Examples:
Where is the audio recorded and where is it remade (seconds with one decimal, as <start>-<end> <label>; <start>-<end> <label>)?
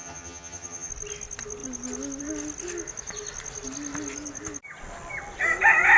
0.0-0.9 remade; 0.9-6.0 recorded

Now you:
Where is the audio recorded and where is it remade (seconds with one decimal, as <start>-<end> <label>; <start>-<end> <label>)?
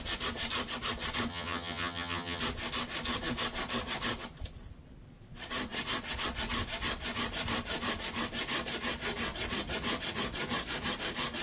0.0-1.3 recorded; 1.3-2.4 remade; 2.4-11.4 recorded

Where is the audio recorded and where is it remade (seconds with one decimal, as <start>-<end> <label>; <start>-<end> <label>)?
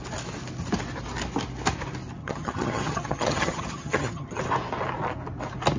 0.0-2.2 recorded; 2.2-4.4 remade; 4.4-5.8 recorded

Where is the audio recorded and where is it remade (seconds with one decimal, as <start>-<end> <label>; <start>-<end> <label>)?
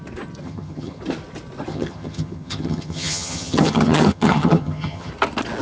0.0-0.4 recorded; 0.4-1.0 remade; 1.0-1.7 recorded; 1.7-5.1 remade; 5.1-5.6 recorded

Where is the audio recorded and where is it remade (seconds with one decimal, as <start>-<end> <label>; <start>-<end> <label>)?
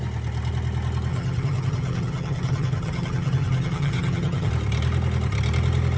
0.0-1.1 recorded; 1.1-4.5 remade; 4.5-6.0 recorded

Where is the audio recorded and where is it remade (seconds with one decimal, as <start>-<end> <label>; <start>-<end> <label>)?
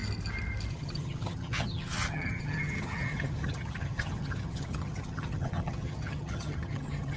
0.0-0.7 recorded; 0.7-7.2 remade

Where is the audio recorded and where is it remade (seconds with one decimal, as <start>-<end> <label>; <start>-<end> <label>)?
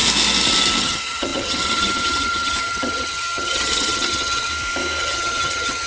0.0-0.8 recorded; 0.8-4.5 remade; 4.5-5.0 recorded; 5.0-5.9 remade